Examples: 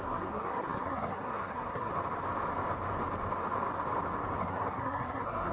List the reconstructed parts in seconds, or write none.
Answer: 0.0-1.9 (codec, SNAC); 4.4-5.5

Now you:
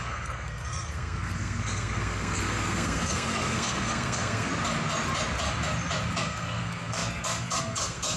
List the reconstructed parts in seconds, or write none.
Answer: 0.0-4.5 (codec, SNAC); 6.2-8.2